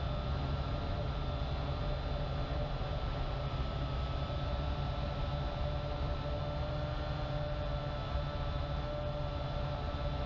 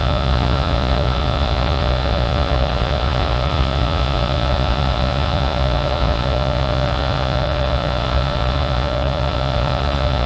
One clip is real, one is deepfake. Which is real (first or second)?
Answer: first